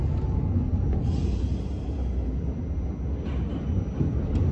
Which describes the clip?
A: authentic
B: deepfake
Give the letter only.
A